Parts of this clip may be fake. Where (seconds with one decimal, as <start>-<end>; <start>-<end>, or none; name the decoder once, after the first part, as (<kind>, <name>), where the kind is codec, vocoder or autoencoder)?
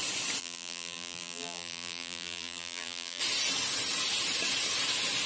0.4-3.2 (vocoder, BigVGAN v2)